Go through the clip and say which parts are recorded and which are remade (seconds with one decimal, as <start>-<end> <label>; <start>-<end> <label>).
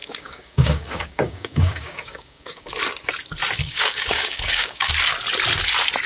0.0-2.7 remade; 2.7-3.6 recorded; 3.6-4.9 remade; 4.9-6.1 recorded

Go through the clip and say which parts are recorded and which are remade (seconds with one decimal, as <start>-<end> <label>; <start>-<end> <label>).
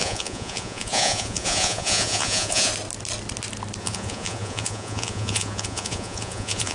0.0-2.7 remade; 2.7-3.8 recorded; 3.8-6.7 remade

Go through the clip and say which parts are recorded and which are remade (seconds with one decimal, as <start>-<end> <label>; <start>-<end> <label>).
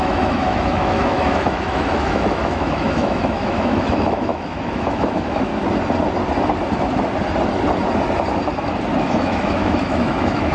0.0-5.5 remade; 5.5-9.0 recorded; 9.0-10.5 remade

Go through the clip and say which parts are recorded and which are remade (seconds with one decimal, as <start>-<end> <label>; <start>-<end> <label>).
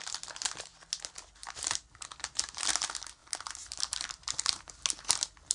0.0-1.4 recorded; 1.4-2.7 remade; 2.7-3.2 recorded; 3.2-4.7 remade; 4.7-5.5 recorded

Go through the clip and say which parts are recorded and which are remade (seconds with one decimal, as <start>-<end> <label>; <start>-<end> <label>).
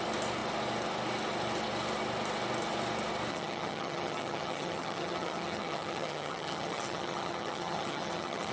0.0-3.3 recorded; 3.3-8.5 remade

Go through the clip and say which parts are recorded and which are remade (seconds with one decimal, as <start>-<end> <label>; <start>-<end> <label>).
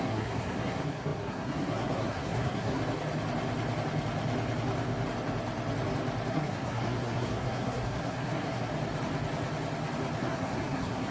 0.0-2.8 remade; 2.8-6.3 recorded; 6.3-8.7 remade; 8.7-10.2 recorded; 10.2-11.1 remade